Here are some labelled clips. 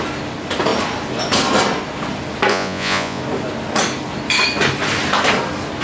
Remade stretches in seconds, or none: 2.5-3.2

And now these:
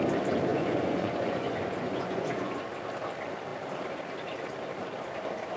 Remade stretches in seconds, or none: 0.5-2.6

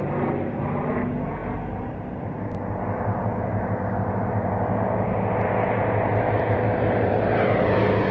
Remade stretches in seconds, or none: none

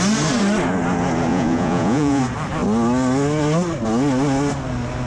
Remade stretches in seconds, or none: 1.3-2.2